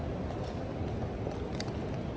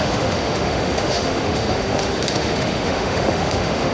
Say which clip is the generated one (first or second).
second